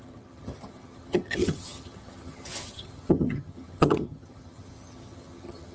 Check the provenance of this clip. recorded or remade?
remade